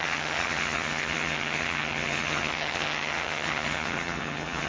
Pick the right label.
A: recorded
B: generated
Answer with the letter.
B